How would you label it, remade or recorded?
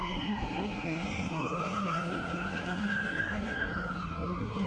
remade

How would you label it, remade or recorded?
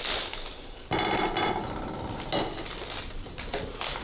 recorded